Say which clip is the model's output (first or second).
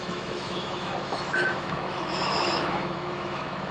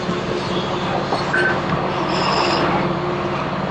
first